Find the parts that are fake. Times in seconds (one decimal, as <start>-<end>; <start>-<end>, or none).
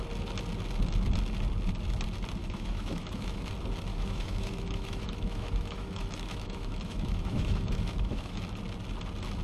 2.4-3.5; 3.9-8.4